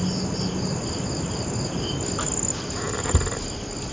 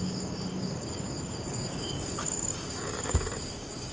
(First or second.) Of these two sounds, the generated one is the second